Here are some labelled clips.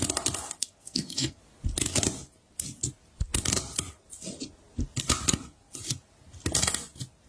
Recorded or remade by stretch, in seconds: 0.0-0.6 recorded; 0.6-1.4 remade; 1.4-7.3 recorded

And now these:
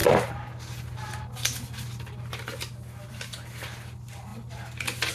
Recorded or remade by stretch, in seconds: 0.0-5.1 recorded

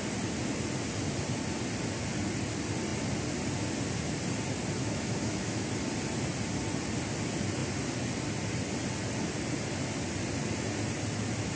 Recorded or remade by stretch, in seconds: 0.0-4.8 recorded; 4.8-5.7 remade; 5.7-11.6 recorded

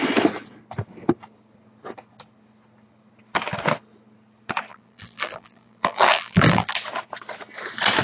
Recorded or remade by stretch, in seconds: 0.0-4.7 recorded; 4.7-6.7 remade; 6.7-8.0 recorded

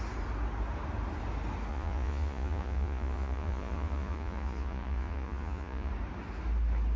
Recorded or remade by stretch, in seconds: 0.0-1.7 recorded; 1.7-5.9 remade; 5.9-7.0 recorded